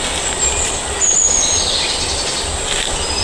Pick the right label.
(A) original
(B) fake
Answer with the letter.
A